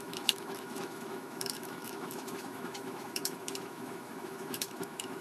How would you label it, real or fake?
fake